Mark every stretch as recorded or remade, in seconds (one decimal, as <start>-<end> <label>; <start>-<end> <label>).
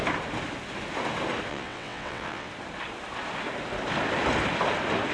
0.0-1.5 recorded; 1.5-2.5 remade; 2.5-5.1 recorded